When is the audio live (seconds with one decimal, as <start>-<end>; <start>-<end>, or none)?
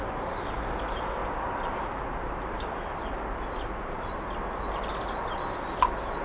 0.0-6.2